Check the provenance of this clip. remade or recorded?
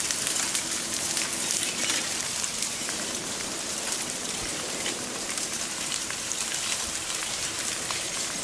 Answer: remade